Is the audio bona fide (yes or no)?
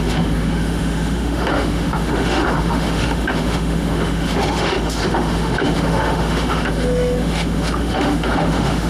no